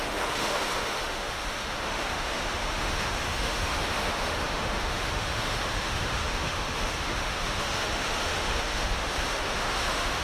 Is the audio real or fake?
fake